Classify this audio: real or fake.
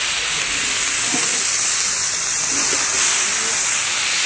real